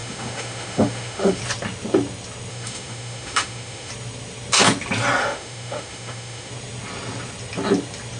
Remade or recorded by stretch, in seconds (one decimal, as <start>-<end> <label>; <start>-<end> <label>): 0.0-1.4 remade; 1.4-2.5 recorded; 2.5-3.9 remade; 3.9-5.2 recorded; 5.2-6.5 remade; 6.5-8.2 recorded

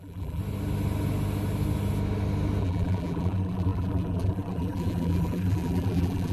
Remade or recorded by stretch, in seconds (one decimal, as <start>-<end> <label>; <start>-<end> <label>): 0.0-0.4 remade; 0.4-2.6 recorded; 2.6-6.3 remade

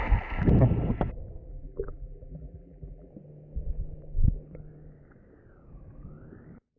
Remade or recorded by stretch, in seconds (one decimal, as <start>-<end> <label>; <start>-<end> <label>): 0.0-1.5 recorded; 1.5-3.1 remade; 3.1-6.8 recorded